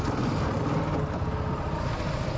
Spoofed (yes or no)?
yes